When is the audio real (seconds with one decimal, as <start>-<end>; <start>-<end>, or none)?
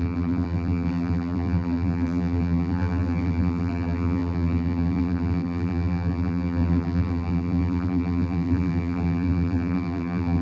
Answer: none